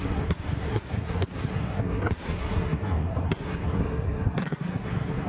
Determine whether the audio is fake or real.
fake